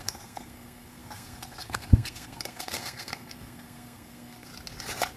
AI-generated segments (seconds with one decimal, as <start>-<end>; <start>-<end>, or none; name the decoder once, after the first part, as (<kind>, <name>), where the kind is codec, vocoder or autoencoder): 0.0-4.5 (codec, SNAC)